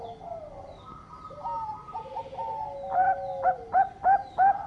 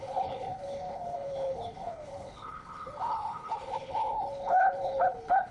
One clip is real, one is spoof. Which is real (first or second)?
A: first